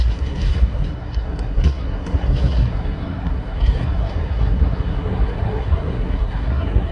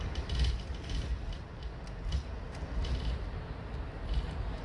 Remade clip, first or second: first